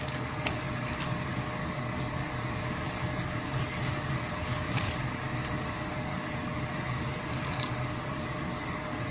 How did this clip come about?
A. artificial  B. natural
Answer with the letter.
A